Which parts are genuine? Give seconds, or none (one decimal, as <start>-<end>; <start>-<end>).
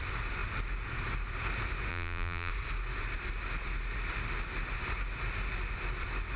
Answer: 0.0-1.9; 2.5-6.4